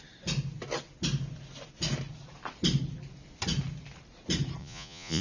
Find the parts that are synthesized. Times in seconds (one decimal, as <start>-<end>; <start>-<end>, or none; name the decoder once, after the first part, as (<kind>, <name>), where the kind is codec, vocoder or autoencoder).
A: 4.6-5.2 (vocoder, Vocos)